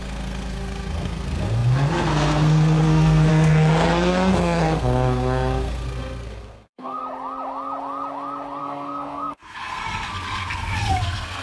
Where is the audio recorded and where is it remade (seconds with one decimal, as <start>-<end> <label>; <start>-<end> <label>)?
0.0-7.0 remade; 7.0-8.6 recorded; 8.6-11.4 remade